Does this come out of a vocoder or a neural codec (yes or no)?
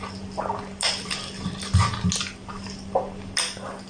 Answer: no